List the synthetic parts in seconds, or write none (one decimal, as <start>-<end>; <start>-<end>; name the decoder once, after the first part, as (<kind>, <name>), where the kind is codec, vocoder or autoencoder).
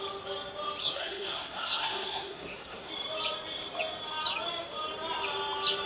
0.8-2.9 (codec, SNAC)